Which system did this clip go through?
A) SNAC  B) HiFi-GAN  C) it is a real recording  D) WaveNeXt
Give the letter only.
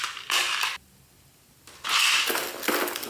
C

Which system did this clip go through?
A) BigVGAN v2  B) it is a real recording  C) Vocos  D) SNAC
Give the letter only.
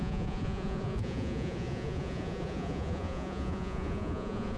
C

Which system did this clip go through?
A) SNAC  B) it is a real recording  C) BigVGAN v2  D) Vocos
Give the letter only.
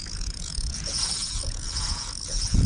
D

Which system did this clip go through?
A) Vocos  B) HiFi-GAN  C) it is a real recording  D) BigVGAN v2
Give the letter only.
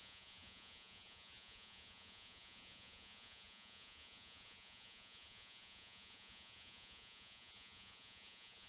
A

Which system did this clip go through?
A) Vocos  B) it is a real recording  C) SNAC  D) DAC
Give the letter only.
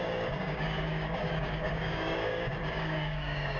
D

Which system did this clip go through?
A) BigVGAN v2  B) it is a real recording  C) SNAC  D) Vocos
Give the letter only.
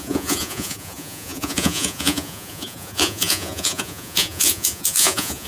D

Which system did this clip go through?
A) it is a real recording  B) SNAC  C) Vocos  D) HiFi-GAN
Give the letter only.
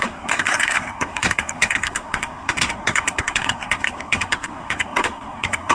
B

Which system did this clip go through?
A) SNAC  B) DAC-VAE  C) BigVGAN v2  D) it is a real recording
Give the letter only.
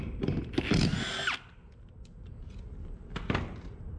D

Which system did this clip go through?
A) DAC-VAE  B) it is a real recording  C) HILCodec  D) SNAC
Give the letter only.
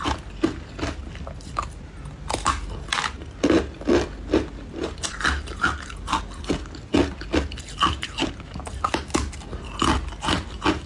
B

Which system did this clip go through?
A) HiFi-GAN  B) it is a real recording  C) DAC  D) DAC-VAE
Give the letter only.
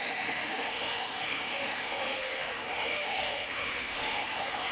D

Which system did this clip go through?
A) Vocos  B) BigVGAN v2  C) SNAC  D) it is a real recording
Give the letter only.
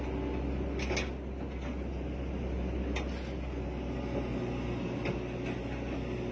D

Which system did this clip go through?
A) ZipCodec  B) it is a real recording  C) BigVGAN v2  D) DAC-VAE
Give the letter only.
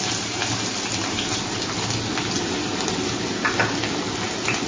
B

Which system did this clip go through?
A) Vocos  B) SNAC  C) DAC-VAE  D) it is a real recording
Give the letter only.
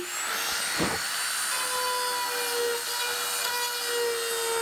D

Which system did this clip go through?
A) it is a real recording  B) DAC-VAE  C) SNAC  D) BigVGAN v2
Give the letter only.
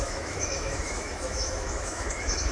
B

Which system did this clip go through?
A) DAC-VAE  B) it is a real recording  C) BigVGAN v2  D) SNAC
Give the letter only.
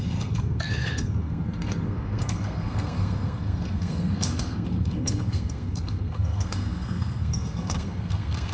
D